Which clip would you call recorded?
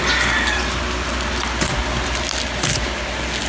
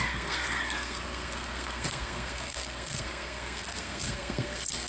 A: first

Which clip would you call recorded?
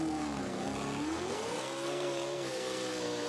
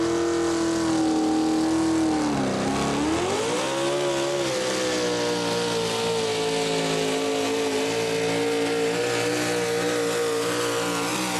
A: second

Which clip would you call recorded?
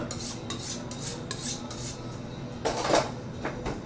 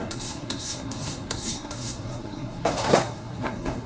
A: first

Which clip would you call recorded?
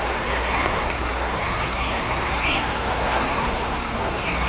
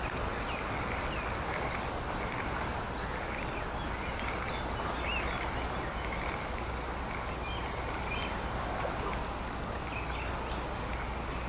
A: second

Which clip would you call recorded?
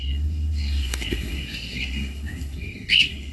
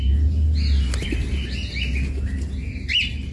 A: second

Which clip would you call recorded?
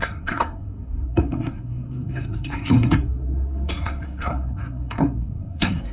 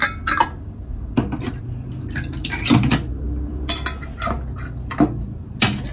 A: second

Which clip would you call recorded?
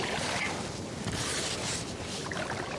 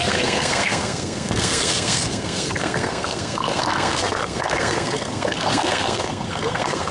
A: first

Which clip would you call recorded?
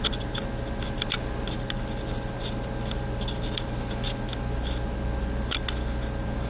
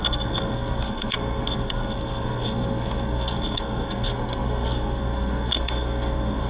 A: first